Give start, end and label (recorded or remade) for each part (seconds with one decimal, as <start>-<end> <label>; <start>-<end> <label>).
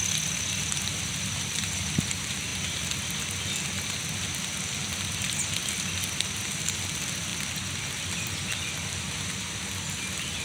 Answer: 0.0-10.4 recorded